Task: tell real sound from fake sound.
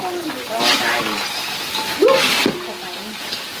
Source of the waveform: real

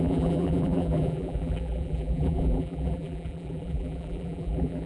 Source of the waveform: fake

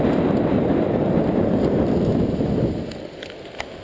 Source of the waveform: real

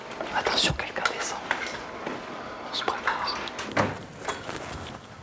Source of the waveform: real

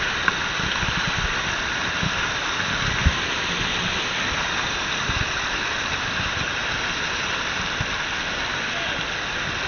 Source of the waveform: real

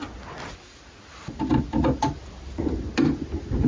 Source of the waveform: real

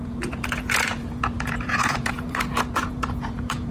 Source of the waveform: fake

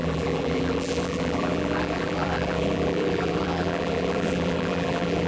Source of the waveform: fake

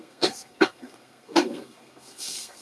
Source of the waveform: fake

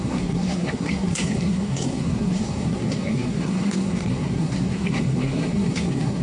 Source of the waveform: fake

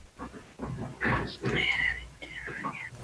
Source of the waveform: real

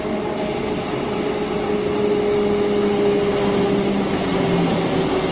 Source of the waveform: real